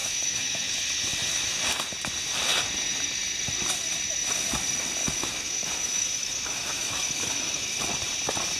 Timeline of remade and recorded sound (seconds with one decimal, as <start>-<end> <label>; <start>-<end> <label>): 0.0-0.7 remade; 0.7-5.0 recorded; 5.0-7.8 remade; 7.8-8.6 recorded